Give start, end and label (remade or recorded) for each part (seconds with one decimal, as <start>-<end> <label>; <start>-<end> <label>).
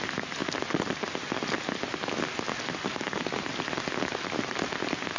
0.0-5.2 recorded